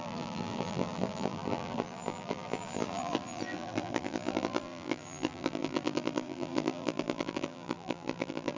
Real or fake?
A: fake